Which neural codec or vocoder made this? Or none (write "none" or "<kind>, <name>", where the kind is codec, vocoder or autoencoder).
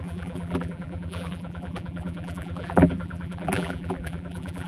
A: vocoder, BigVGAN v2